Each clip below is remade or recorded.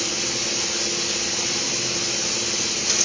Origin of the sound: recorded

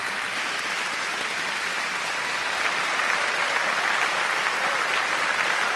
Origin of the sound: remade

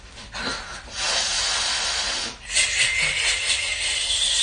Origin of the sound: recorded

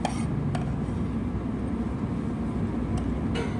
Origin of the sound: recorded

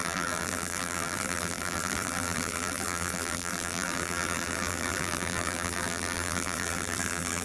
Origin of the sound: remade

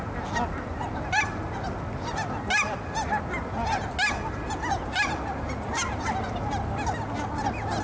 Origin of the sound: recorded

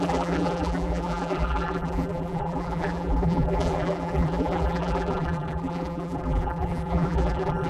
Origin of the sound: remade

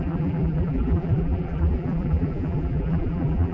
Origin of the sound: remade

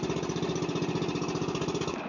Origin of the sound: recorded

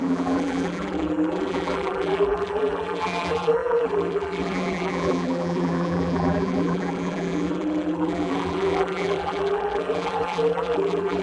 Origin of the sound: remade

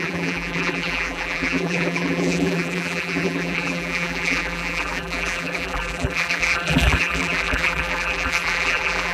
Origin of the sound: remade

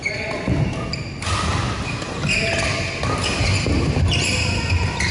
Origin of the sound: recorded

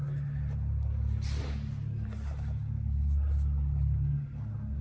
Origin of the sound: recorded